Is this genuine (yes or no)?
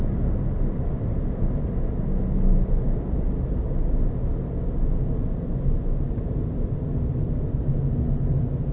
yes